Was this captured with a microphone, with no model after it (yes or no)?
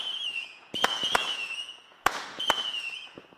no